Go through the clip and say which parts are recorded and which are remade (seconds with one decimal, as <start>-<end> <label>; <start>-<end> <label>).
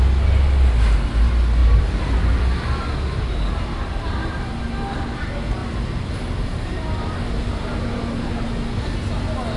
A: 0.0-1.6 recorded; 1.6-2.4 remade; 2.4-3.5 recorded; 3.5-4.6 remade; 4.6-5.6 recorded; 5.6-8.1 remade; 8.1-9.6 recorded